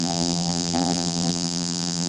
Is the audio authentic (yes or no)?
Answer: no